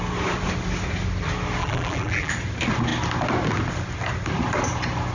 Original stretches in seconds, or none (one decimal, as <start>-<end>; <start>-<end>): 0.0-1.6; 2.3-5.1